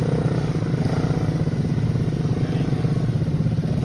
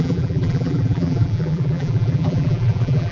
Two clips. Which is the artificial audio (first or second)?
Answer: second